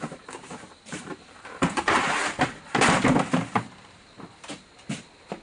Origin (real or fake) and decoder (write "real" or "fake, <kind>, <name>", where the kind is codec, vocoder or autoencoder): fake, vocoder, BigVGAN v2